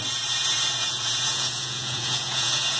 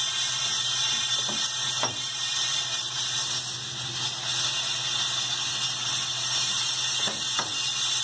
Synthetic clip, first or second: first